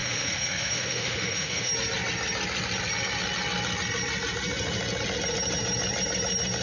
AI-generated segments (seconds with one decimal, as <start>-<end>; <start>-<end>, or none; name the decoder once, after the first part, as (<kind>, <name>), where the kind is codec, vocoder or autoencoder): 0.0-1.7 (autoencoder, DAC-VAE)